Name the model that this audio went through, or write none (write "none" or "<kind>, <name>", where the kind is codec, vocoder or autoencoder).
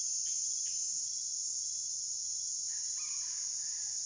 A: none